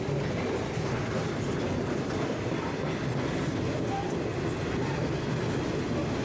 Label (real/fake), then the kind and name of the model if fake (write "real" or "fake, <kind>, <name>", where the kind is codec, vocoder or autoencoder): real